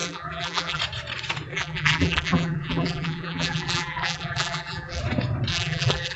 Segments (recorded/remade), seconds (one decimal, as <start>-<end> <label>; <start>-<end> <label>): 0.0-0.8 remade; 0.8-1.5 recorded; 1.5-5.0 remade; 5.0-5.5 recorded; 5.5-6.2 remade